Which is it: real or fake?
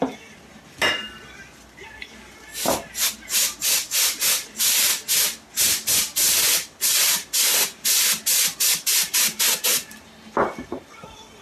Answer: real